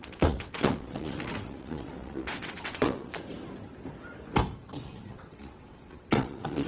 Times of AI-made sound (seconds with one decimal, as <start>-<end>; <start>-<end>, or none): 0.0-3.1; 4.7-6.7